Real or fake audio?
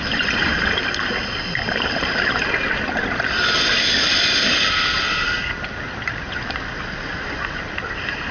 real